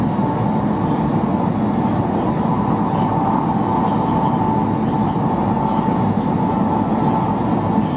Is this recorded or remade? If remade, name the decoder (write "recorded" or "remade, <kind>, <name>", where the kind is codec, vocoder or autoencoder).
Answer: recorded